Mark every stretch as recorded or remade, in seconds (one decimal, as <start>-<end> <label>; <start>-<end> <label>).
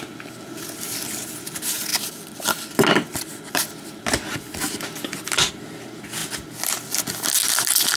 0.0-8.0 recorded